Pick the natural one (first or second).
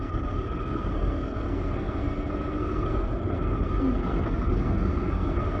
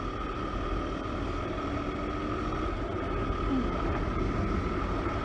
second